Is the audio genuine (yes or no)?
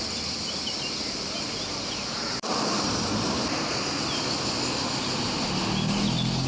yes